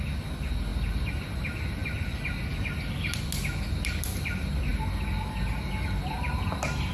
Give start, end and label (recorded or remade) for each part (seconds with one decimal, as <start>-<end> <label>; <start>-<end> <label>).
0.0-6.9 recorded

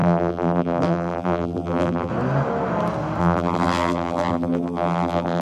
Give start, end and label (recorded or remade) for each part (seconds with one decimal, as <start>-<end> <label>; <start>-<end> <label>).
0.0-2.1 remade; 2.1-3.2 recorded; 3.2-5.4 remade

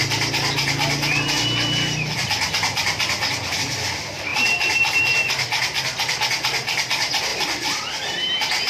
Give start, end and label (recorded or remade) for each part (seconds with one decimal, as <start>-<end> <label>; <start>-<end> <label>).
0.0-4.3 recorded; 4.3-5.0 remade; 5.0-7.3 recorded; 7.3-8.7 remade

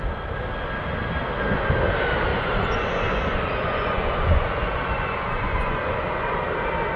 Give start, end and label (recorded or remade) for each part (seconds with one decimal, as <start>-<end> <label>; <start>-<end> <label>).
0.0-2.3 recorded; 2.3-6.5 remade; 6.5-7.0 recorded

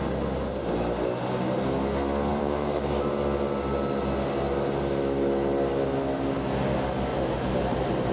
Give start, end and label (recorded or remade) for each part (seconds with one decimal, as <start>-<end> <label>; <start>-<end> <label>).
0.0-2.3 recorded; 2.3-3.1 remade; 3.1-7.1 recorded; 7.1-8.1 remade

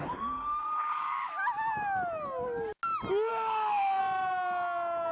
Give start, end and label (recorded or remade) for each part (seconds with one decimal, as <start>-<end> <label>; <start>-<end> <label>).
0.0-1.3 remade; 1.3-3.3 recorded; 3.3-4.0 remade; 4.0-5.1 recorded

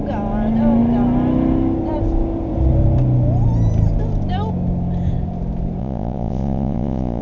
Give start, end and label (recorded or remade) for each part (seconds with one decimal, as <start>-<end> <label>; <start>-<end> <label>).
0.0-5.8 recorded; 5.8-7.2 remade

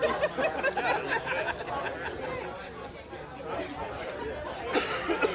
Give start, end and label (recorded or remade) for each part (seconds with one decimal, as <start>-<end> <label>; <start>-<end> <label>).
0.0-5.3 recorded